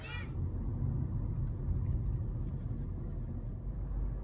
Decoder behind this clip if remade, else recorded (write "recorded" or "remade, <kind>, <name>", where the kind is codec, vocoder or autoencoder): recorded